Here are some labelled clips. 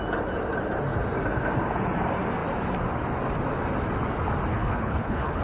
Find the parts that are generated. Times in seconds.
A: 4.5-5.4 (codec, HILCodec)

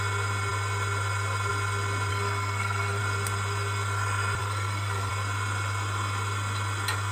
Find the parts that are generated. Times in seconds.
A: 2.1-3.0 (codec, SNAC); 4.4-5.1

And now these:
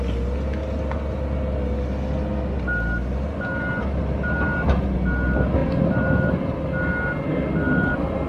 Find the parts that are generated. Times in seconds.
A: none